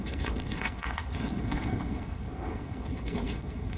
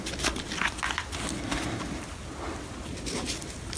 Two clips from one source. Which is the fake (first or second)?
first